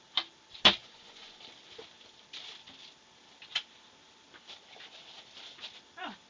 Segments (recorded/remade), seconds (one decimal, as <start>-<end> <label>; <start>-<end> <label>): 0.0-0.8 recorded; 0.8-1.4 remade; 1.4-6.3 recorded